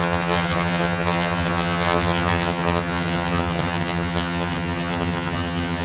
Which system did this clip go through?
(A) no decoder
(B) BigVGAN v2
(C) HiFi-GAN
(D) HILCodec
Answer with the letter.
C